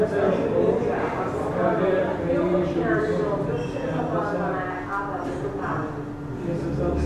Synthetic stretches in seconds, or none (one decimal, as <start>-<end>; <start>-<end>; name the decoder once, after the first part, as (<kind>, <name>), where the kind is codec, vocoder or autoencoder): 1.6-3.2 (vocoder, BigVGAN v2)